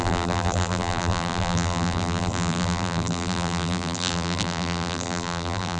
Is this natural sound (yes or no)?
no